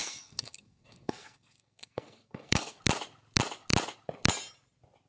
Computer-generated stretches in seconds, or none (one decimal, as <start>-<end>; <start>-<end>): 0.0-2.8